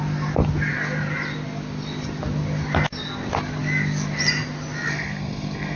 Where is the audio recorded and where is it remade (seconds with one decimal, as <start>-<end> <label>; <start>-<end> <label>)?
0.0-4.9 recorded; 4.9-5.8 remade

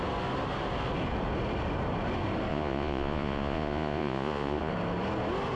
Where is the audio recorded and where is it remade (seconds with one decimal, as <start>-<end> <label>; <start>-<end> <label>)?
0.0-2.5 recorded; 2.5-4.7 remade; 4.7-5.6 recorded